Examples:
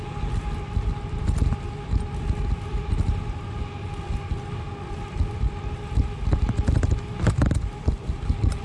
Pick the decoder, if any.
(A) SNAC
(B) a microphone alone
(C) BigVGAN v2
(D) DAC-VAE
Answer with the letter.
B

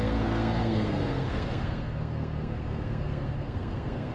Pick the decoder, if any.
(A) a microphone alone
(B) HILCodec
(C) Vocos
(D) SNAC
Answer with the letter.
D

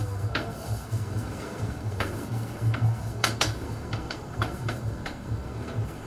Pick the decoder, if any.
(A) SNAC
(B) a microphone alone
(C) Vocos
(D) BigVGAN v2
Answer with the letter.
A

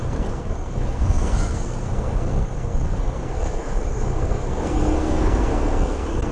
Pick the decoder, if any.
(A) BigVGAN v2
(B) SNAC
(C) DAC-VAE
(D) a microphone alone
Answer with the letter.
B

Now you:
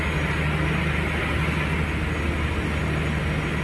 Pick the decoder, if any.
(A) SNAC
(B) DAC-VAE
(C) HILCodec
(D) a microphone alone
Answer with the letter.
D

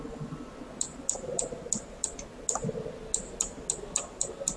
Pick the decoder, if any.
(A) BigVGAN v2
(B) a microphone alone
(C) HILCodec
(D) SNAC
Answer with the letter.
B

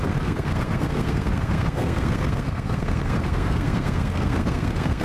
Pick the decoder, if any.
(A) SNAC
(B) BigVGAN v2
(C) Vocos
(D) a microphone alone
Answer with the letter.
A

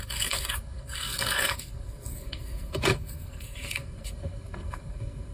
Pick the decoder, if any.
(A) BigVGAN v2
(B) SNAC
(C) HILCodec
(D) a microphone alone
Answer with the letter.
B